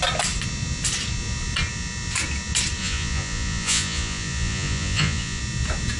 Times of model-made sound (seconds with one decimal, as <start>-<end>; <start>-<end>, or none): 2.8-5.4